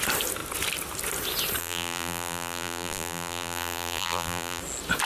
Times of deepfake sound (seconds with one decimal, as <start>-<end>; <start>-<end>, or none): 1.6-4.6